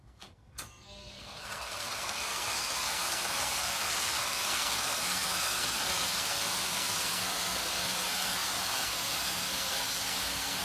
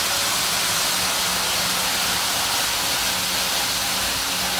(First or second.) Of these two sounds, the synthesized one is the first